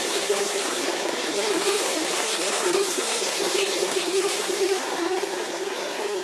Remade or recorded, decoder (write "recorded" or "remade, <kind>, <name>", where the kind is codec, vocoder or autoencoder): remade, codec, SNAC